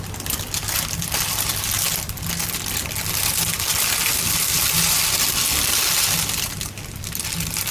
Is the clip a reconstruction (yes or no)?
no